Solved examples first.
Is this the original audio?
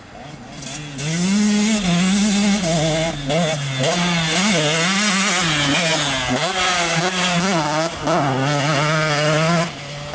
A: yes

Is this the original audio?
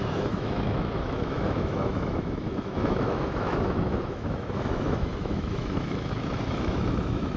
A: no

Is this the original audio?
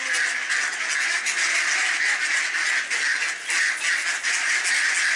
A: yes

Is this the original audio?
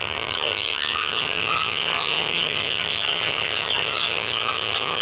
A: no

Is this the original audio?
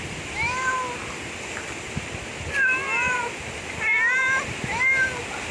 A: yes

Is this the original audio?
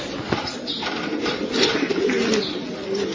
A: yes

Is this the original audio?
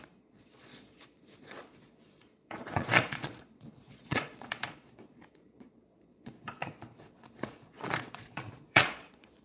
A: no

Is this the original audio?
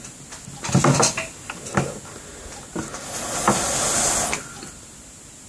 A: yes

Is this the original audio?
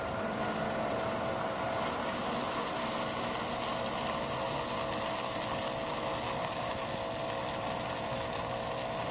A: yes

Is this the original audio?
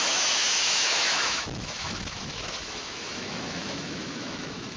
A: no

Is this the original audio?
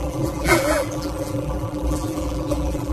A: no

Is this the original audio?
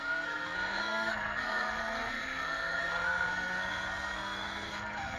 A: no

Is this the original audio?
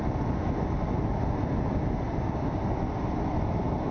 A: yes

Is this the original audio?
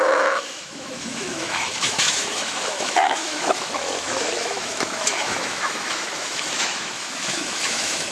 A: no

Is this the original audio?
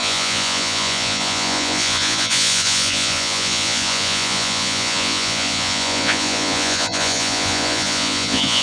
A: no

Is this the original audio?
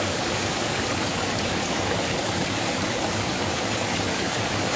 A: no